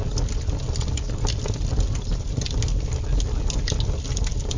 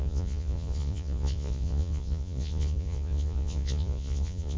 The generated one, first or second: second